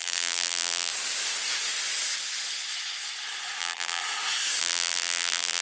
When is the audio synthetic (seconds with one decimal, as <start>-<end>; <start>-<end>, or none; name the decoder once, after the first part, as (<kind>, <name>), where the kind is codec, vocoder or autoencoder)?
0.0-0.9 (vocoder, BigVGAN v2); 3.6-4.0; 4.6-5.6